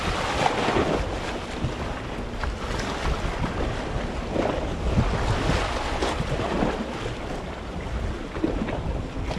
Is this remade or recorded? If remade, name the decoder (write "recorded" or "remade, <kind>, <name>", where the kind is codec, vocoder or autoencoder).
recorded